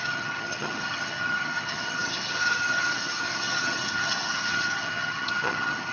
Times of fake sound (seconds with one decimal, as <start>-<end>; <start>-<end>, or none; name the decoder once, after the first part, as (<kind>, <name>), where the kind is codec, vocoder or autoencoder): 0.0-5.9 (vocoder, HiFi-GAN)

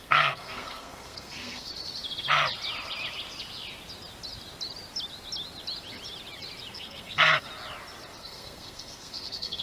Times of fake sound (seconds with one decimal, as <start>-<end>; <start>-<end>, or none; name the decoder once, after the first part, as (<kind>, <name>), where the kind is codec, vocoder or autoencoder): 0.0-1.7 (codec, SNAC); 6.7-7.5; 8.2-9.6

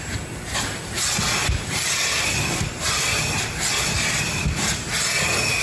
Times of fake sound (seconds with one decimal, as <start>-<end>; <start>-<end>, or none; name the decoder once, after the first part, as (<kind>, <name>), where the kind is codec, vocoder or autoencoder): 1.4-4.8 (vocoder, BigVGAN v2)

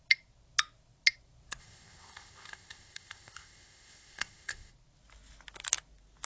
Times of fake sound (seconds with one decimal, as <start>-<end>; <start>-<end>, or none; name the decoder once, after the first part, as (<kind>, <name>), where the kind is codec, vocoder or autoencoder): 1.6-4.7 (codec, ZipCodec)

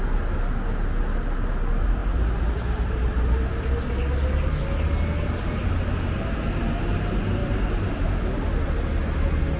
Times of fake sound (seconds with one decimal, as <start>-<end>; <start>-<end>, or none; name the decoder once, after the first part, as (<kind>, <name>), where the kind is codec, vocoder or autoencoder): 2.0-3.7 (vocoder, BigVGAN v2); 7.4-8.2